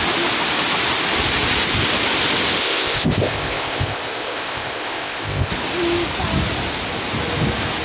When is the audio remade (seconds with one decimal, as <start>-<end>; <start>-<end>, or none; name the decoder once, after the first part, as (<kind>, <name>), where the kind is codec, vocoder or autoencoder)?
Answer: 2.6-5.5 (codec, ZipCodec)